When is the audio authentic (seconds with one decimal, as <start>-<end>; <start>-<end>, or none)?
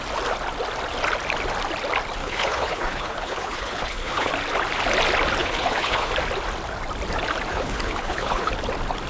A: 0.0-2.2; 4.3-5.4; 6.1-7.5; 8.5-9.1